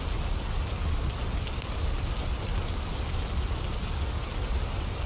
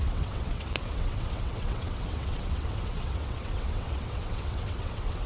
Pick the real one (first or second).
first